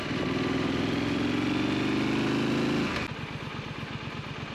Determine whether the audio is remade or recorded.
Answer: recorded